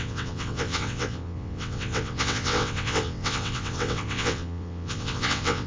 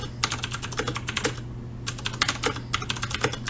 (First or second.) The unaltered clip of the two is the second